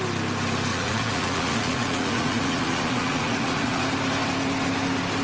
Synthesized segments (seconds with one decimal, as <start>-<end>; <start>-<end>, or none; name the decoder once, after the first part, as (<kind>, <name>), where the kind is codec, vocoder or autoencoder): 0.7-3.8 (vocoder, Vocos)